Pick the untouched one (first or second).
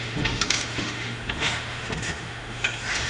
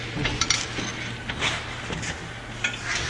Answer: second